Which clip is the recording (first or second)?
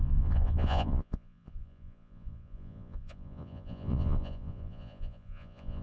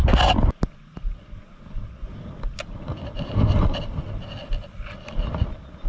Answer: second